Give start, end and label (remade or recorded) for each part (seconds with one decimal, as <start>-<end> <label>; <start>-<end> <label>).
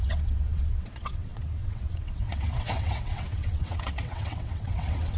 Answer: 0.0-5.2 remade